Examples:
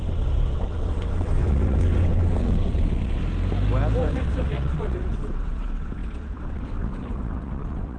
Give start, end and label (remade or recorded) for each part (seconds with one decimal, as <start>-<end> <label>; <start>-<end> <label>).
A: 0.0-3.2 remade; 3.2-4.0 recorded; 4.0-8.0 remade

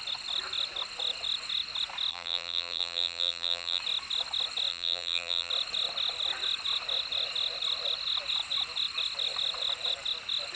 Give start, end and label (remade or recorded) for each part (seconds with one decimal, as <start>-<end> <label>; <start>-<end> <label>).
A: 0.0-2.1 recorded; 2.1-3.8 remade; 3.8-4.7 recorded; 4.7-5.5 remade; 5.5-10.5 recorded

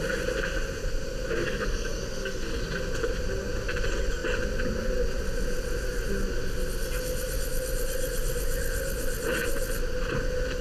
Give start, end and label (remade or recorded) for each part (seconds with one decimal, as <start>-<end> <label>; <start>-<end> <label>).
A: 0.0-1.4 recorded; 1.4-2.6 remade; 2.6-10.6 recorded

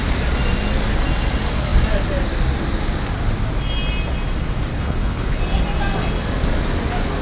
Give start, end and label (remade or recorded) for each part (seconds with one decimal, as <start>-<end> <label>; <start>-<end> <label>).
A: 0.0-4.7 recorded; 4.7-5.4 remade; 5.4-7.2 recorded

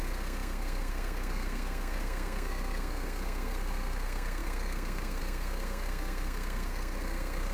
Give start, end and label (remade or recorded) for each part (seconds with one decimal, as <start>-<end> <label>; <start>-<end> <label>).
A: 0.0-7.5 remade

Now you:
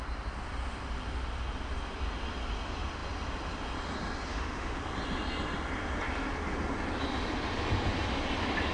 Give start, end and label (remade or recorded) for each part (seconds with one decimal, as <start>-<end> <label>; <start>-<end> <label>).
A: 0.0-4.3 recorded; 4.3-4.8 remade; 4.8-8.7 recorded

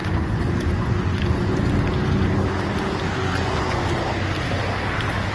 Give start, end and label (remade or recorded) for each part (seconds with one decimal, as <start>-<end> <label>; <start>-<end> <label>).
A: 0.0-1.7 remade; 1.7-3.2 recorded; 3.2-3.8 remade; 3.8-5.3 recorded